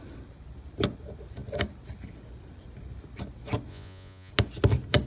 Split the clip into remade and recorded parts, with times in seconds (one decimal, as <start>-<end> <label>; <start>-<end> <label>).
0.0-3.7 recorded; 3.7-4.3 remade; 4.3-5.1 recorded